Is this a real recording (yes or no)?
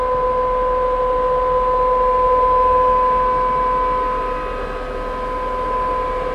yes